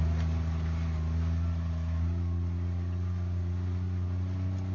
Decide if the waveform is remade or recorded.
recorded